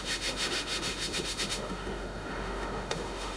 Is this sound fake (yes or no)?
yes